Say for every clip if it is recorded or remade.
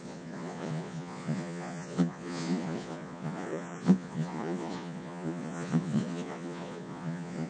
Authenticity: remade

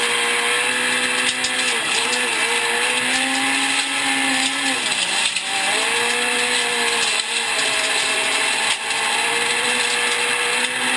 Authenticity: recorded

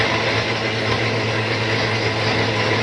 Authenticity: recorded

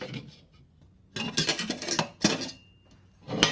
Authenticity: recorded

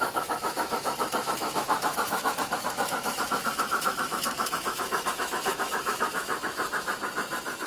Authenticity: remade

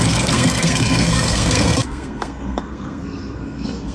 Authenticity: remade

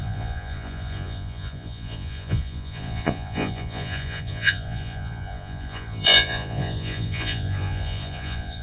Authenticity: remade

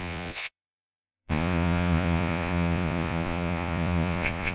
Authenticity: remade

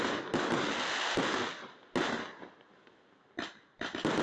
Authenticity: recorded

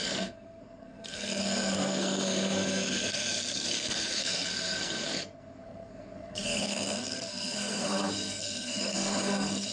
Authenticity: remade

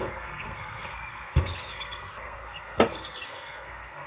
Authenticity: remade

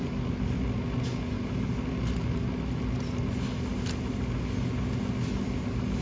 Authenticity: recorded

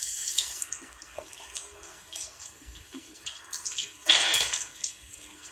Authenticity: remade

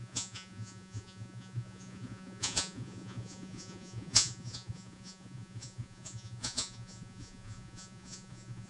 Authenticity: remade